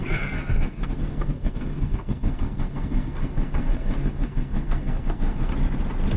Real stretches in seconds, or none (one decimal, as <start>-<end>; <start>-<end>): 5.5-6.2